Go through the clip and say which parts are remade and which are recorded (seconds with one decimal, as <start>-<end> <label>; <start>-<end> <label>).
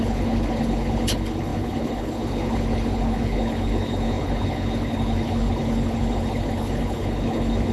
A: 0.0-7.7 remade